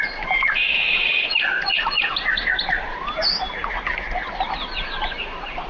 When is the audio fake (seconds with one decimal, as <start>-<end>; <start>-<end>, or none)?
none